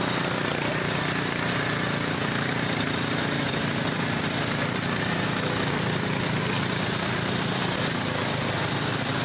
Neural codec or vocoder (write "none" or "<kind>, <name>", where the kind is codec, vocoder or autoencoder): vocoder, BigVGAN v2